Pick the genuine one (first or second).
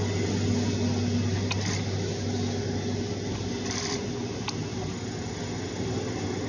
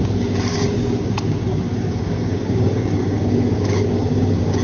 first